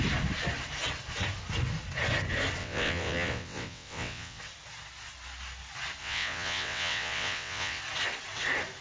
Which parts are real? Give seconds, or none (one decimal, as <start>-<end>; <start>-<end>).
0.0-2.6; 4.4-6.0; 7.8-8.8